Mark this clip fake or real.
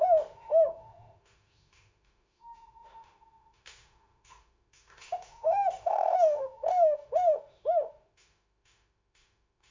fake